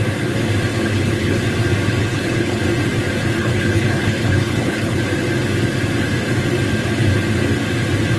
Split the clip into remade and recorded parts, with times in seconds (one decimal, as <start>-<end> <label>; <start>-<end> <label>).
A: 0.0-0.7 recorded; 0.7-1.4 remade; 1.4-2.0 recorded; 2.0-2.6 remade; 2.6-3.4 recorded; 3.4-5.0 remade; 5.0-8.2 recorded